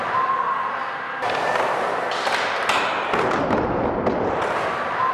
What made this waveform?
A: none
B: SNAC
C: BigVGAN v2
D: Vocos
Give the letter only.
A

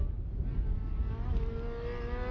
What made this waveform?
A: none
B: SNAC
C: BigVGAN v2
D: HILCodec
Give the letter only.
A